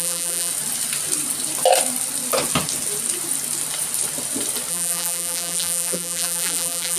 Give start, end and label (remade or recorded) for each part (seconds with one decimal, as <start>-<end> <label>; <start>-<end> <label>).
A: 0.0-0.5 remade; 0.5-4.7 recorded; 4.7-7.0 remade